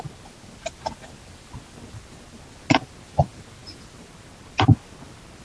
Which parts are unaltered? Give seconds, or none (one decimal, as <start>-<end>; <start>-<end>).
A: 0.0-5.4